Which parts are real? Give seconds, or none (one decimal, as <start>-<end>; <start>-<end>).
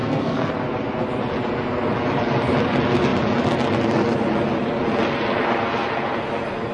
0.5-6.7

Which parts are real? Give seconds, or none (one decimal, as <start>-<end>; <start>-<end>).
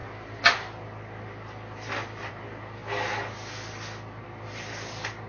0.0-5.3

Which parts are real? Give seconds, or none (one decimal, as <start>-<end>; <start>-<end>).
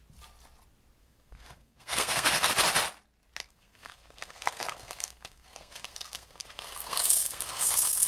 0.0-1.0; 2.5-3.4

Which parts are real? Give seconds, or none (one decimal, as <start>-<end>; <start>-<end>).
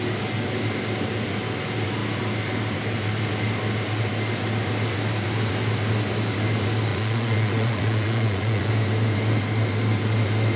0.0-6.9; 8.7-10.6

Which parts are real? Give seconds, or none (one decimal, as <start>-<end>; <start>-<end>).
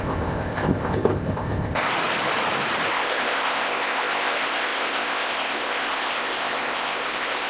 1.9-2.9